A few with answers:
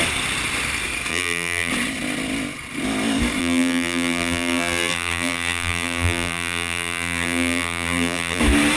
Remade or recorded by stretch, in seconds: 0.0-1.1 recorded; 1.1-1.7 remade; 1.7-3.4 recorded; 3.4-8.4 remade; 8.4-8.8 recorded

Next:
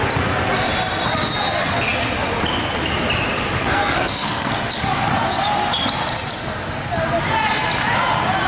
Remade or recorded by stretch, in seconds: 0.0-3.6 recorded; 3.6-4.5 remade; 4.5-8.5 recorded

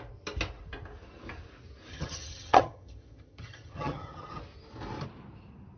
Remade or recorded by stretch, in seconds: 0.0-1.9 recorded; 1.9-4.4 remade; 4.4-5.8 recorded

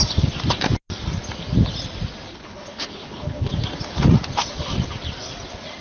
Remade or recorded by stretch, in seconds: 0.0-2.3 recorded; 2.3-3.5 remade; 3.5-5.8 recorded

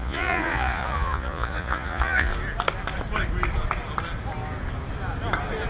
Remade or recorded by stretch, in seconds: 0.0-2.3 remade; 2.3-5.7 recorded

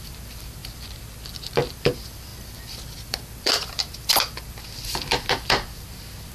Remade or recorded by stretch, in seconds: 0.0-0.6 remade; 0.6-1.7 recorded; 1.7-6.3 remade

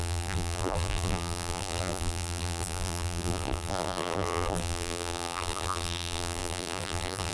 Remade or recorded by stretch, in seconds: 0.0-7.3 remade